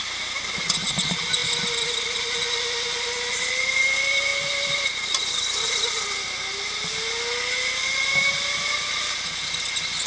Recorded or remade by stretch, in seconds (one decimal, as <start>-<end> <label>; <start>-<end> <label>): 0.0-10.1 recorded